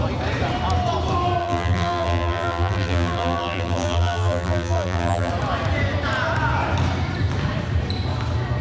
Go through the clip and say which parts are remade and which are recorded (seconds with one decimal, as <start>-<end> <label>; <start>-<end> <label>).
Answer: 0.0-1.4 recorded; 1.4-5.3 remade; 5.3-8.6 recorded